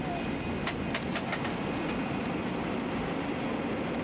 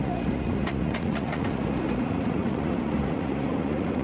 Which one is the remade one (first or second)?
second